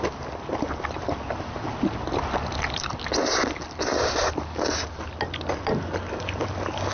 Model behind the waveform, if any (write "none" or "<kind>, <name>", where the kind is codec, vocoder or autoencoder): none